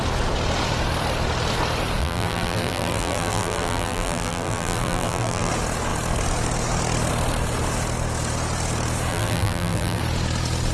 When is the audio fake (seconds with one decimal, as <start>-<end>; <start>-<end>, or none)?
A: 2.0-5.5; 9.1-10.0